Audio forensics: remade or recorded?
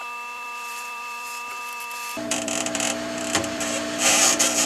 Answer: remade